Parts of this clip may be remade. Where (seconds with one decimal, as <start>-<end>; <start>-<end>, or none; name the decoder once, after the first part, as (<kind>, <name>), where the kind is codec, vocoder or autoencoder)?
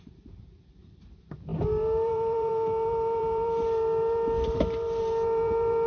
0.0-5.9 (vocoder, BigVGAN v2)